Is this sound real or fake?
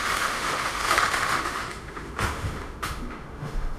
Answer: fake